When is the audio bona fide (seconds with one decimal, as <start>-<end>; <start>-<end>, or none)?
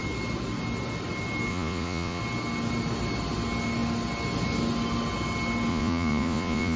0.0-1.5; 2.2-5.7